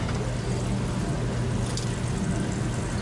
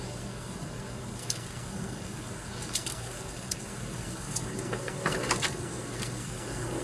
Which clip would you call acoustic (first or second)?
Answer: first